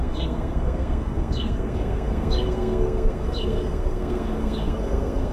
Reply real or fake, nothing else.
fake